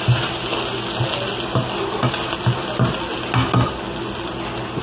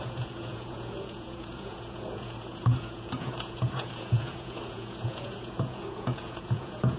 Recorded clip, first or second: first